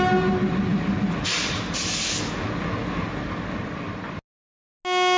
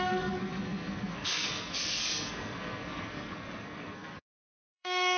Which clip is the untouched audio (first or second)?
first